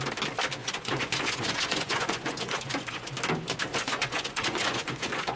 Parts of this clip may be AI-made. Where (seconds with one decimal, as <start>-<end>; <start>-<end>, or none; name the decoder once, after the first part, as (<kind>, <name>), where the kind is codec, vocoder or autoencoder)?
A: 0.6-3.1 (vocoder, Vocos); 3.7-5.4